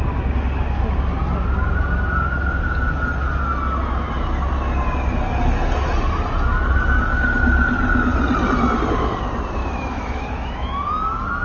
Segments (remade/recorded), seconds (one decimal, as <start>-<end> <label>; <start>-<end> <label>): 0.0-9.6 recorded; 9.6-10.9 remade; 10.9-11.4 recorded